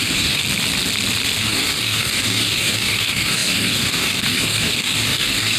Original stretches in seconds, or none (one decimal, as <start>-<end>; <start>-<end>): 0.4-1.4